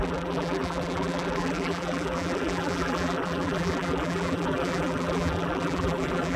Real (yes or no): no